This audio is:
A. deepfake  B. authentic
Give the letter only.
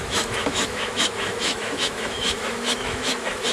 A